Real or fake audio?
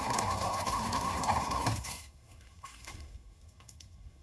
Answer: fake